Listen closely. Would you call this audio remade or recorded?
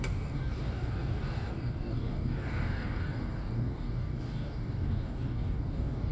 remade